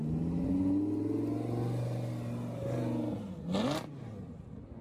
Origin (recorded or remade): recorded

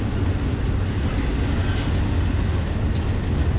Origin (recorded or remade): recorded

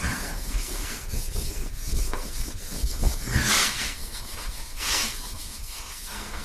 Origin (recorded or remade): remade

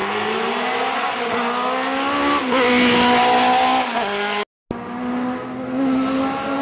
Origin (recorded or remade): recorded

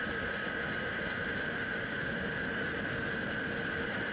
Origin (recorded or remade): recorded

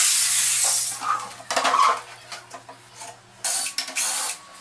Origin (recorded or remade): recorded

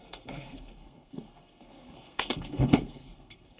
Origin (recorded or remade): remade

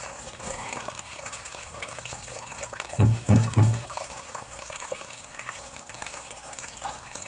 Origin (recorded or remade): remade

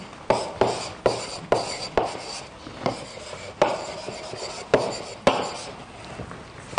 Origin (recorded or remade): recorded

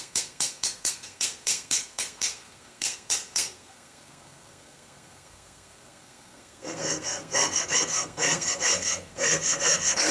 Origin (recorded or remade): remade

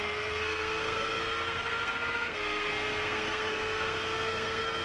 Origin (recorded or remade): remade